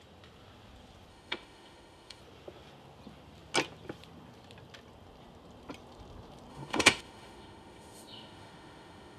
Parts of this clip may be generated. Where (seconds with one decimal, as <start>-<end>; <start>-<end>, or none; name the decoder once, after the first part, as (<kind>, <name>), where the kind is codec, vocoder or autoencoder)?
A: 1.1-2.2 (autoencoder, DAC-VAE); 6.5-9.2